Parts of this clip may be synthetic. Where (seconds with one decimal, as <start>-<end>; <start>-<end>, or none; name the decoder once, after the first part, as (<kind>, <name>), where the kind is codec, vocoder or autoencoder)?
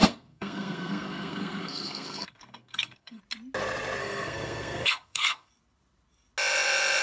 0.0-3.2 (codec, SNAC); 4.0-5.5